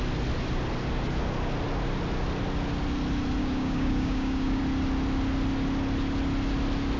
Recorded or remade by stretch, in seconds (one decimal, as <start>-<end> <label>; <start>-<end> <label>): 0.0-3.4 recorded; 3.4-4.6 remade; 4.6-7.0 recorded